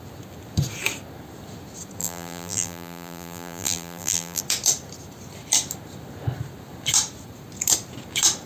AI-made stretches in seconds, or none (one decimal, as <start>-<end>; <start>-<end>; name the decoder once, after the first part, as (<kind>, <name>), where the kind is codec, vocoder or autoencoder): 2.0-4.4 (vocoder, BigVGAN v2)